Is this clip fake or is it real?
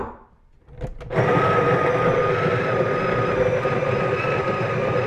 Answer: real